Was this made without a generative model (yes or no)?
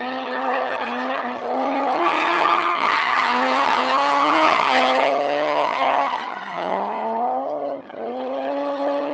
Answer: no